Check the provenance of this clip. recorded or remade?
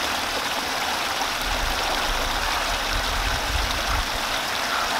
recorded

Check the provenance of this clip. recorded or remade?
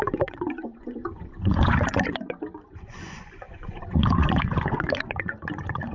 remade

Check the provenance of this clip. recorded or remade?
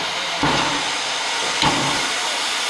recorded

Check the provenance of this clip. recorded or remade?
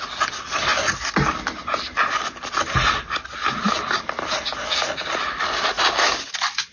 recorded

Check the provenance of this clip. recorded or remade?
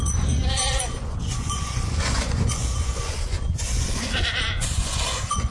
remade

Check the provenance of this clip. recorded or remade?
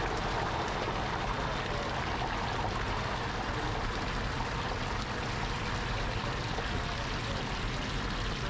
recorded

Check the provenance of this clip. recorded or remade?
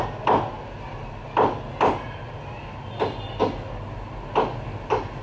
recorded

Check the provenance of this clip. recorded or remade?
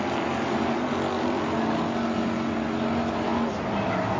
recorded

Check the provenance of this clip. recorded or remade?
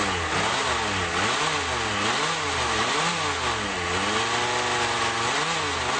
recorded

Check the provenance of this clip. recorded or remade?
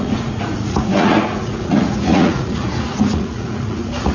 remade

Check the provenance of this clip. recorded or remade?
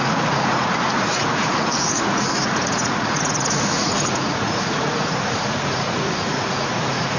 remade